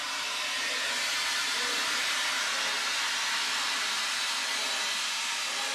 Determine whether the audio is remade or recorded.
recorded